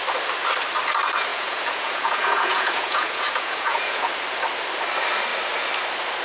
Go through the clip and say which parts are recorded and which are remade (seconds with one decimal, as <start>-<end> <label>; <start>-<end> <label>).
0.0-1.3 recorded; 1.3-4.1 remade; 4.1-6.2 recorded